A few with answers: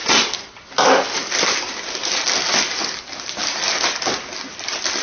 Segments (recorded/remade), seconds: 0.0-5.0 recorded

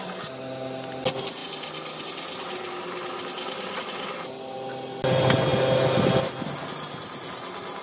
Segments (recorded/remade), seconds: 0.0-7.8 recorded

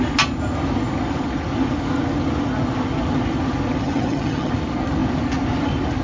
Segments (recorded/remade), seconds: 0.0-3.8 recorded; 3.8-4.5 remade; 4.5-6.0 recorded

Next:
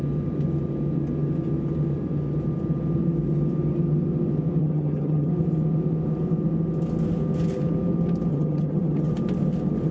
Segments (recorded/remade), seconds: 0.0-4.6 recorded; 4.6-5.3 remade; 5.3-8.3 recorded; 8.3-9.1 remade; 9.1-9.9 recorded

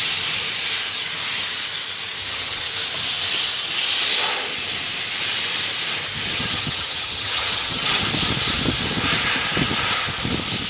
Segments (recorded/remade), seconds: 0.0-2.2 recorded; 2.2-2.7 remade; 2.7-6.3 recorded; 6.3-8.0 remade; 8.0-10.7 recorded

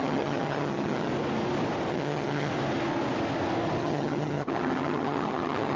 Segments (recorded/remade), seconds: 0.0-1.1 remade; 1.1-1.9 recorded; 1.9-2.5 remade; 2.5-3.8 recorded; 3.8-5.8 remade

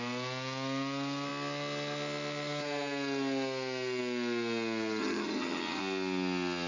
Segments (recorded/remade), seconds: 0.0-5.0 recorded; 5.0-5.8 remade; 5.8-6.7 recorded